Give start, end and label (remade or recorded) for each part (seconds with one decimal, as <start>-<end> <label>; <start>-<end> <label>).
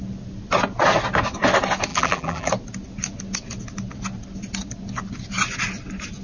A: 0.0-1.9 recorded; 1.9-2.5 remade; 2.5-6.2 recorded